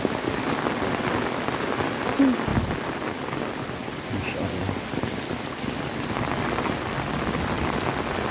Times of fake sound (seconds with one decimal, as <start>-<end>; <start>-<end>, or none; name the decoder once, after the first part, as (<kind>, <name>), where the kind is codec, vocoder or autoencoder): none